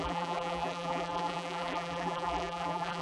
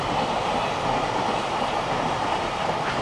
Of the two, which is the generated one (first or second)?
first